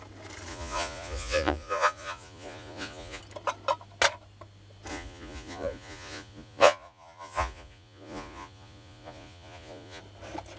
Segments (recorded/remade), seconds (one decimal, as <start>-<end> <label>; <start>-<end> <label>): 0.0-0.5 recorded; 0.5-3.2 remade; 3.2-4.9 recorded; 4.9-10.0 remade; 10.0-10.6 recorded